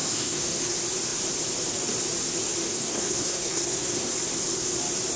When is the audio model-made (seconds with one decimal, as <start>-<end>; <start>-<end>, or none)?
0.0-0.6; 2.7-4.1